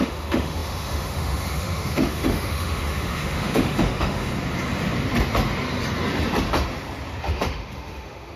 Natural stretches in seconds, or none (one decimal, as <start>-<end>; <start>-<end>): 4.3-7.2